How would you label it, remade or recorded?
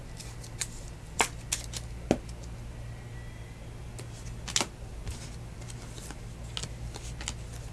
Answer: recorded